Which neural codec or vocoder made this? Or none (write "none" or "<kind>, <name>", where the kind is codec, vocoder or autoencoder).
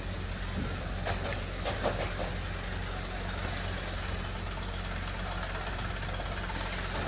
none